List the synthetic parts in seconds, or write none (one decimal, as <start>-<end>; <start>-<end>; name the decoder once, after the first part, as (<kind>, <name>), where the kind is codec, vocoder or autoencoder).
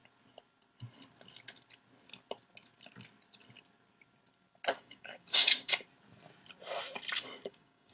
4.7-5.7 (codec, DAC); 7.5-7.9